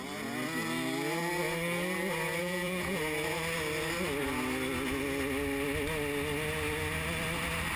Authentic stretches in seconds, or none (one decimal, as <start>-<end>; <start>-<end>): 0.0-2.4; 3.0-7.8